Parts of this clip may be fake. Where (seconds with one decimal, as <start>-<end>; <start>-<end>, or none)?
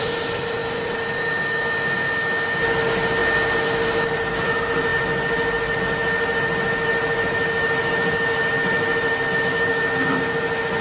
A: none